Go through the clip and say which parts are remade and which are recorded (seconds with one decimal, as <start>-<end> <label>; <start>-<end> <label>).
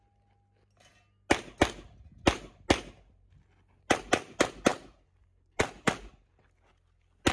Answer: 0.0-7.3 recorded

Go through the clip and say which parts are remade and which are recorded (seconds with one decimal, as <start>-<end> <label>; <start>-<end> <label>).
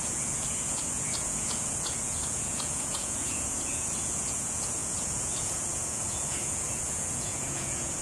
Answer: 0.0-8.0 remade